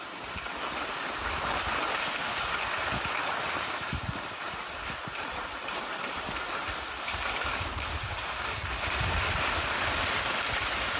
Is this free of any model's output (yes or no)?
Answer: yes